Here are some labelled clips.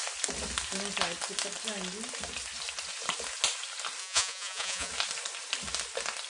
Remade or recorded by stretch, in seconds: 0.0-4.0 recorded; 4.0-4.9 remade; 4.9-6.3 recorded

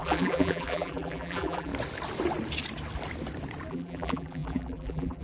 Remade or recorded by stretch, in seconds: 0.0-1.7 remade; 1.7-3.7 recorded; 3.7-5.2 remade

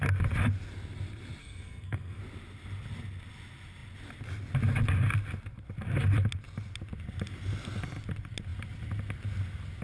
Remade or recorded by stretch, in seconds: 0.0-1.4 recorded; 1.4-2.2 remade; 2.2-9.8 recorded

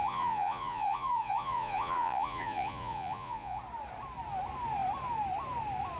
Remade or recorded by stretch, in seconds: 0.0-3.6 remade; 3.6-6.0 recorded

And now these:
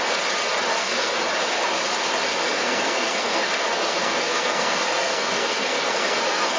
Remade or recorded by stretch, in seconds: 0.0-0.7 recorded; 0.7-1.2 remade; 1.2-2.3 recorded; 2.3-6.6 remade